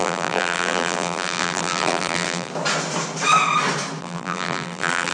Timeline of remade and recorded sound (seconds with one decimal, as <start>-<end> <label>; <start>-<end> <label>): 0.0-2.5 remade; 2.5-4.0 recorded; 4.0-5.1 remade